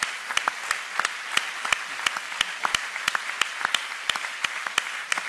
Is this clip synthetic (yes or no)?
no